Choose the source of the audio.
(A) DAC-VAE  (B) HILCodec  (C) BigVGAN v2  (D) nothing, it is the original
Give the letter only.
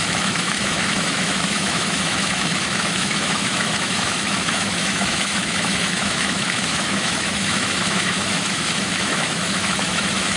A